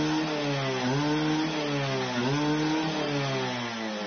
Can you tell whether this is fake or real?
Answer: real